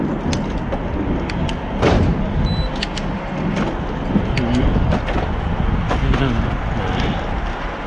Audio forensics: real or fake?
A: real